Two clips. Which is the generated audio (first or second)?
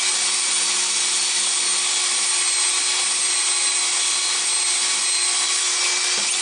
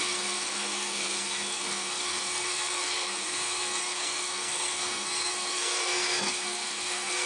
second